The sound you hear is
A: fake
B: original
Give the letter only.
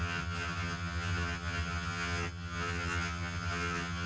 A